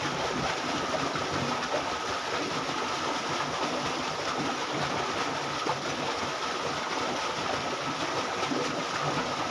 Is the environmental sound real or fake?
real